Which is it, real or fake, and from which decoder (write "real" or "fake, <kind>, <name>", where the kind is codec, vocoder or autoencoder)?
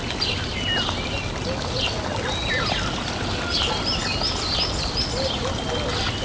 real